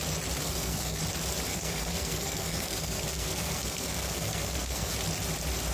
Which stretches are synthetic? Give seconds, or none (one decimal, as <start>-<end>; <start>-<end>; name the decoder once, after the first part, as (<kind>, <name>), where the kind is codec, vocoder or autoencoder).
0.4-1.0 (codec, SNAC); 1.5-4.9